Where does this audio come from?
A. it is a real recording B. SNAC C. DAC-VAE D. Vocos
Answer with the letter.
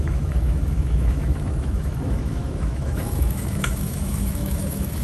C